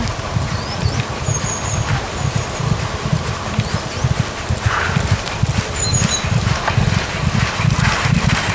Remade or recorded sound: recorded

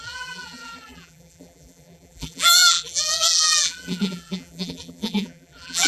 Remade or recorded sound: remade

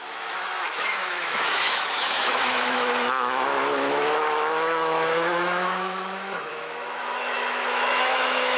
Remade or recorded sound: remade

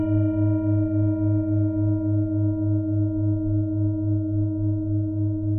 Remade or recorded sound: recorded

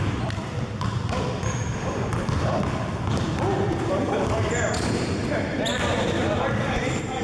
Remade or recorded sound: remade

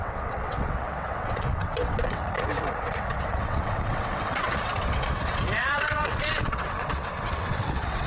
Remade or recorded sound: remade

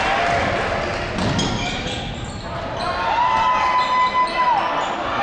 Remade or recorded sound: recorded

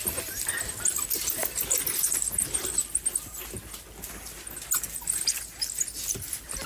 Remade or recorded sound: recorded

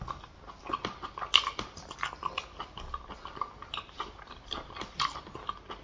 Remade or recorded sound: recorded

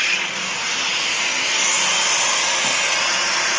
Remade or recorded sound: recorded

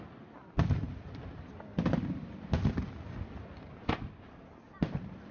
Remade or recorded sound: recorded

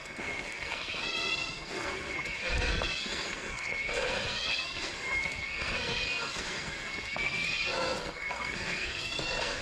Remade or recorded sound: remade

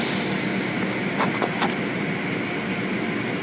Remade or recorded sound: recorded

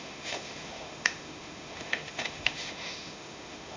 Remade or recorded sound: remade